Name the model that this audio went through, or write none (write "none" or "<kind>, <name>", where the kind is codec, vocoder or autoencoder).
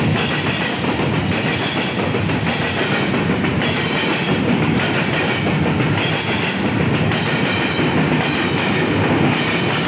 none